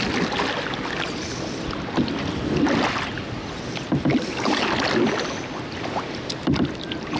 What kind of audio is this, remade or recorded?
recorded